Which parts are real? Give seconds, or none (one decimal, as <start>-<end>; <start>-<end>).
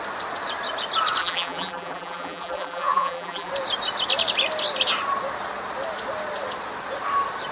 0.0-1.2; 3.5-7.5